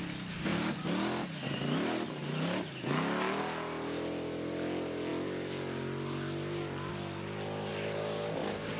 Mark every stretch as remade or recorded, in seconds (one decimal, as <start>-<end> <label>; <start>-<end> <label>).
0.0-8.8 recorded